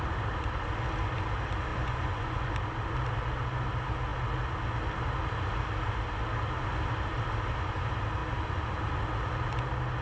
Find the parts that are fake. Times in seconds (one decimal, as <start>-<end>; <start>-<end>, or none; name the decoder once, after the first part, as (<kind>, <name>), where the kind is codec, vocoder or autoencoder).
1.7-2.5 (vocoder, Vocos)